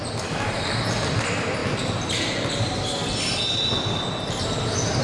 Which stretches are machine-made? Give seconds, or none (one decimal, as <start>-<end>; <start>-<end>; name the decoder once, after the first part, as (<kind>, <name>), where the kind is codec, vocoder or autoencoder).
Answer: none